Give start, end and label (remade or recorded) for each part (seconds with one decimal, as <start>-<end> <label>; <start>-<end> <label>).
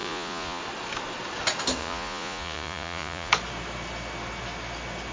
0.0-0.6 remade; 0.6-1.8 recorded; 1.8-3.3 remade; 3.3-5.1 recorded